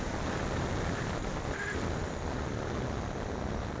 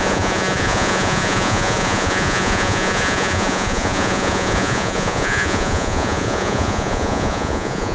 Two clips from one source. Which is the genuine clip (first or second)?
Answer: first